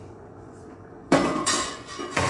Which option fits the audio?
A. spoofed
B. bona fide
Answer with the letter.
A